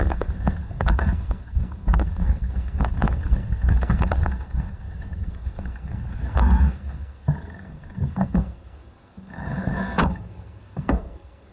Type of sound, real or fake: fake